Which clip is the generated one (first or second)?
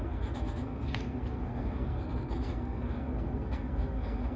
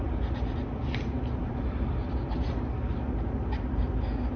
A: first